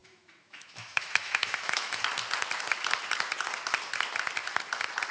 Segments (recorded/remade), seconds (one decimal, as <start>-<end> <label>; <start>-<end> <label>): 0.0-2.0 remade; 2.0-5.1 recorded